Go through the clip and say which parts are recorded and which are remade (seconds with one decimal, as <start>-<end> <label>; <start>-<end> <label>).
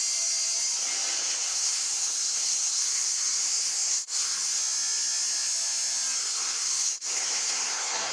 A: 0.0-1.2 recorded; 1.2-4.6 remade; 4.6-6.2 recorded; 6.2-8.1 remade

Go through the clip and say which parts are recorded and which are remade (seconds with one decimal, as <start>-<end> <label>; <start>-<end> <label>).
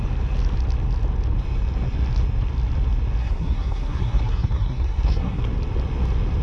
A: 0.0-3.2 recorded; 3.2-5.4 remade; 5.4-6.4 recorded